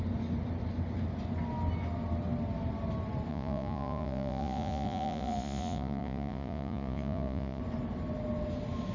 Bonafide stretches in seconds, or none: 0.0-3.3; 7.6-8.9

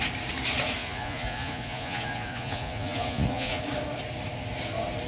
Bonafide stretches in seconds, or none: 0.0-0.8; 3.6-5.1

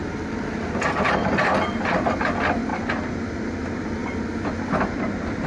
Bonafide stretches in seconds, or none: 0.0-5.5